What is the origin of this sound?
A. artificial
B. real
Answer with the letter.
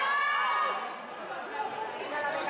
B